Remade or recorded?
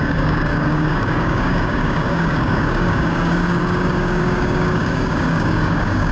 remade